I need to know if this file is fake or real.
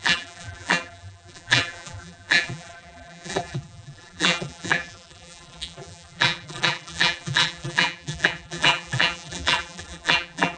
fake